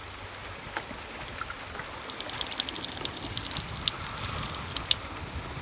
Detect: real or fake real